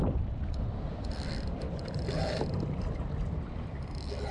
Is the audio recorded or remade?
remade